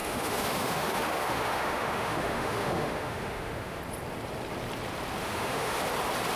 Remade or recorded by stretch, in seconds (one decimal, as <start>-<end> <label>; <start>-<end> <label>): 0.0-3.8 remade; 3.8-5.2 recorded; 5.2-5.8 remade; 5.8-6.4 recorded